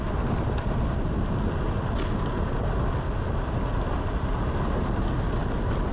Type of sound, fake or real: real